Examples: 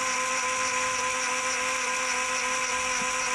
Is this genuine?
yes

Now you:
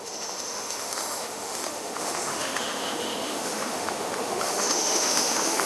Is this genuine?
no